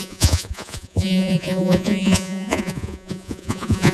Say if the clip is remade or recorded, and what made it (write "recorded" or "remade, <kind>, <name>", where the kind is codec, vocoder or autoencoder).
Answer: remade, vocoder, Vocos